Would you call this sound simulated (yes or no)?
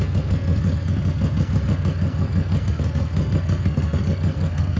yes